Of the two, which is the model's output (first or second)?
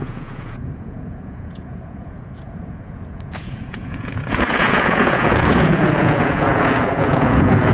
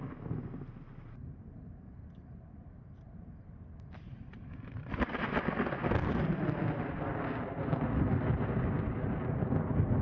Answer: first